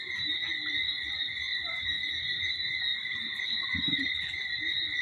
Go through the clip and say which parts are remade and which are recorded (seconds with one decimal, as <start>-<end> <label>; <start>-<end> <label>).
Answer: 0.0-1.5 recorded; 1.5-2.1 remade; 2.1-2.9 recorded; 2.9-4.6 remade; 4.6-5.0 recorded